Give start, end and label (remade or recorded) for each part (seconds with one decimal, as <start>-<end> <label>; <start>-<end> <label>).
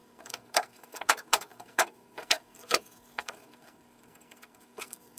0.0-5.2 remade